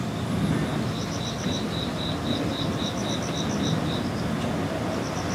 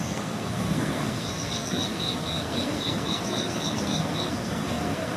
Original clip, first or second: first